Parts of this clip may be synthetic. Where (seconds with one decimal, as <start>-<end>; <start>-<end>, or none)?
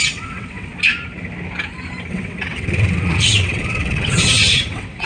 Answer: 0.0-0.7; 2.1-5.1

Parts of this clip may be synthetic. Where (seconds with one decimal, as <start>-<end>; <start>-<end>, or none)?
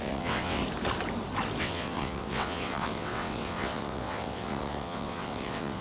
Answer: 0.0-0.6; 1.6-5.8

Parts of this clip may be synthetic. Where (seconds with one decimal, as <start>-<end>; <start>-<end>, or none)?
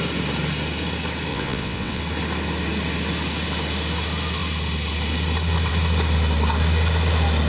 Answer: 1.3-2.0